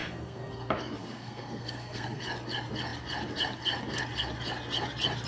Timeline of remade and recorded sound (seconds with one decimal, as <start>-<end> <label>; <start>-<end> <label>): 0.0-0.5 remade; 0.5-1.0 recorded; 1.0-2.2 remade; 2.2-5.3 recorded